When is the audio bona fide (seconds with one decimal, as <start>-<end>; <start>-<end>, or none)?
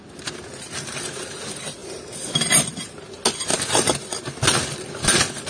0.0-5.5